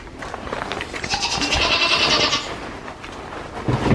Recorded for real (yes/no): yes